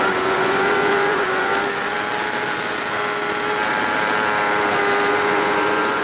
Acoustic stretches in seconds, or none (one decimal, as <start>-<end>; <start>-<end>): 1.5-5.1